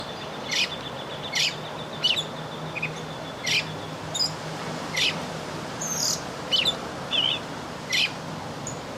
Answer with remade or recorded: recorded